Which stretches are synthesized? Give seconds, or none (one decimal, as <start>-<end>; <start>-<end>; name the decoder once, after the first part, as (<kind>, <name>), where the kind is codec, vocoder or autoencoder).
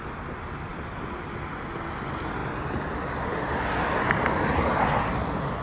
none